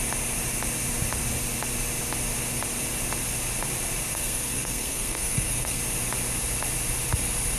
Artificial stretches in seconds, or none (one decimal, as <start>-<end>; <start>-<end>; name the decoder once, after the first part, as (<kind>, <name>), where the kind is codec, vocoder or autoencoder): 4.1-5.8 (codec, SNAC)

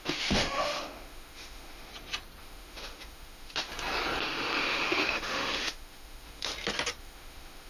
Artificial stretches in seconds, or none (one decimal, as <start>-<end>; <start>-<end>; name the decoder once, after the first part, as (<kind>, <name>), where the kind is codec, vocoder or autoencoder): 0.0-1.9 (autoencoder, DAC-VAE); 2.4-3.7; 4.2-6.5; 7.0-7.7

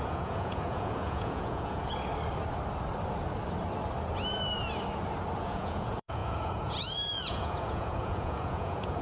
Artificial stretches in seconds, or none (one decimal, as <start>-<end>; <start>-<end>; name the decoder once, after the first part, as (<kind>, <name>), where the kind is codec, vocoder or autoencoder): 0.0-2.1 (vocoder, Vocos); 5.4-9.0